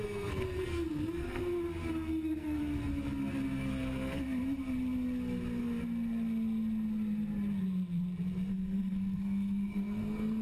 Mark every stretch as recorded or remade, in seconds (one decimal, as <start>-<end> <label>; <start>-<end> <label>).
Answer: 0.0-1.4 remade; 1.4-1.9 recorded; 1.9-2.6 remade; 2.6-3.7 recorded; 3.7-4.2 remade; 4.2-8.5 recorded; 8.5-10.4 remade